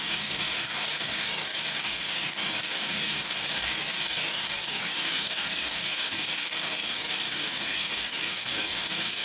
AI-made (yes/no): yes